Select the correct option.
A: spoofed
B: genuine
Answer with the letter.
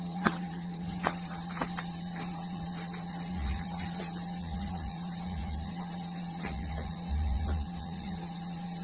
A